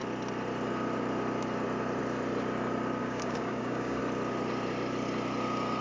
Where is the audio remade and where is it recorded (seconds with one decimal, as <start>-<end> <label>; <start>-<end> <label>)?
0.0-3.0 recorded; 3.0-4.0 remade; 4.0-5.8 recorded